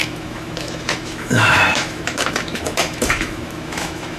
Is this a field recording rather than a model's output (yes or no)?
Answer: no